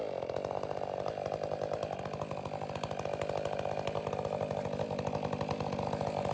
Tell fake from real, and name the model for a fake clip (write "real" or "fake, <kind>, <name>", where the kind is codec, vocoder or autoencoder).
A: real